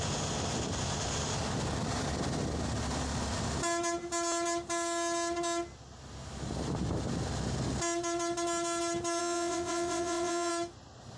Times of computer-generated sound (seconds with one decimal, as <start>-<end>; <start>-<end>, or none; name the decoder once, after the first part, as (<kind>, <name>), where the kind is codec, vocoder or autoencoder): 9.2-10.5 (vocoder, WaveNeXt)

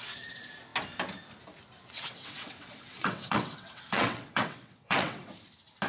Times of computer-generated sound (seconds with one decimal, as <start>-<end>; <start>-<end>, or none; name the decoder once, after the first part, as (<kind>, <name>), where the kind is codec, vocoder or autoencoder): 1.8-5.3 (vocoder, WaveNeXt)